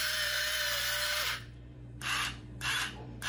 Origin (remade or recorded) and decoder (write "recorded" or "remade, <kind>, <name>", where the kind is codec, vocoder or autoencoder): remade, vocoder, BigVGAN v2